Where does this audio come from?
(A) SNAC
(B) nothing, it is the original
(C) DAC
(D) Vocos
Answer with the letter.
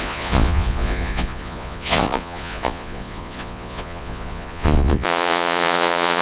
D